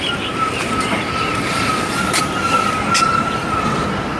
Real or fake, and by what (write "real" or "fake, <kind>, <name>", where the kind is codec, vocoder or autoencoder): real